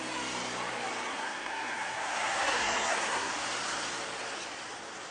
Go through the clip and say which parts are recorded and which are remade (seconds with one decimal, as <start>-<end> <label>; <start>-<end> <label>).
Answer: 0.0-1.1 recorded; 1.1-3.3 remade; 3.3-5.1 recorded